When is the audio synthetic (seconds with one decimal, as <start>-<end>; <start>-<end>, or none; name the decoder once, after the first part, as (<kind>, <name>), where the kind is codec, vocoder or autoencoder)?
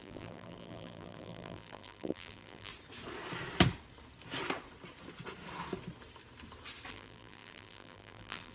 0.0-2.7 (vocoder, BigVGAN v2); 6.9-8.5